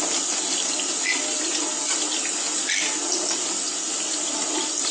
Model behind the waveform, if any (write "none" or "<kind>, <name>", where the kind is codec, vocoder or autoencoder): none